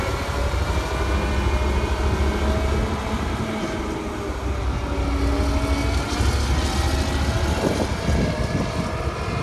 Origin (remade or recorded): recorded